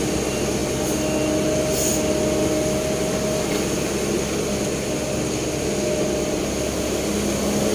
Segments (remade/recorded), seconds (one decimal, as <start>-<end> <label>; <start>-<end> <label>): 0.0-7.7 recorded